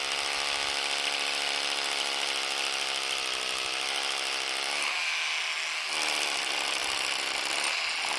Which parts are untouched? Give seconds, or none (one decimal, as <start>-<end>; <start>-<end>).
0.0-8.2